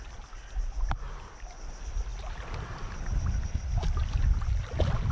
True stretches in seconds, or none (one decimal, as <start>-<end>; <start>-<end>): 0.0-5.1